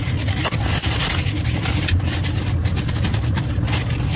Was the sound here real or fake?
fake